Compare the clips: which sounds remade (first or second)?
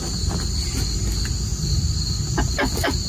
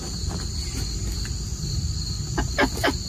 second